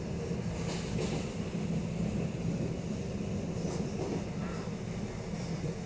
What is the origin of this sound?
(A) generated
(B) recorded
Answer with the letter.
B